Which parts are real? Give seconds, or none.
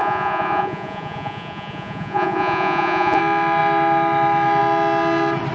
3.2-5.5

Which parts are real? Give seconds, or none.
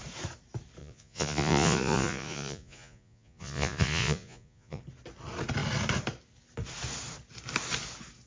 0.0-0.8; 4.8-8.3